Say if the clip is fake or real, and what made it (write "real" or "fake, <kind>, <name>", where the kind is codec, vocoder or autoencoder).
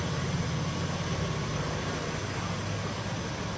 real